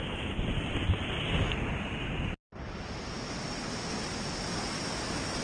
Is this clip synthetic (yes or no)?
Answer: no